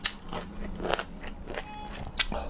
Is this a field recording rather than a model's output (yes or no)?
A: yes